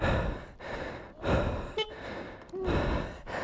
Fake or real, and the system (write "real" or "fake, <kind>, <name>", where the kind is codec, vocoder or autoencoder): real